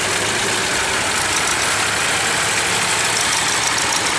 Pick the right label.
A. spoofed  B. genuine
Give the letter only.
B